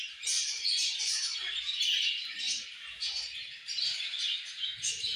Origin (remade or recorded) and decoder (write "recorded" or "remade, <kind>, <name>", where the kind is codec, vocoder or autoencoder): remade, vocoder, BigVGAN v2